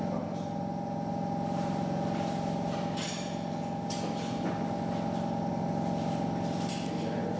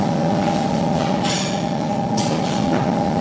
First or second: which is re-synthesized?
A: second